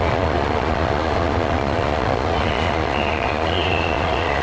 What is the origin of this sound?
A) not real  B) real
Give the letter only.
A